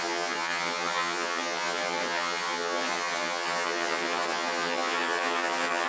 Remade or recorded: remade